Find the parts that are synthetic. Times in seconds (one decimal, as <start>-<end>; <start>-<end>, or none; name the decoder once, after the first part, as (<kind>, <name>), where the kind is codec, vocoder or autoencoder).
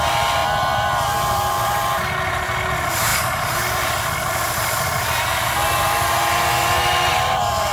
none